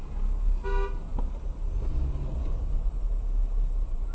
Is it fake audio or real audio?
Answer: real